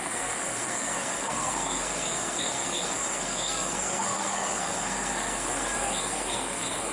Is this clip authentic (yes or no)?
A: no